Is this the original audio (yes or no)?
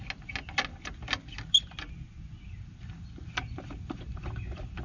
yes